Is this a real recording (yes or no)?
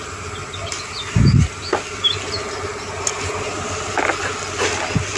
yes